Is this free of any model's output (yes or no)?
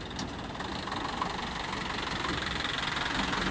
yes